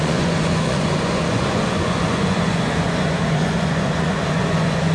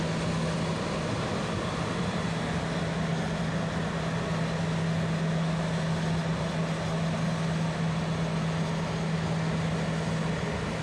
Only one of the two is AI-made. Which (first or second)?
first